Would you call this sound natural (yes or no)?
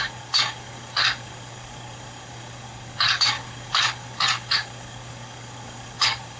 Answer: no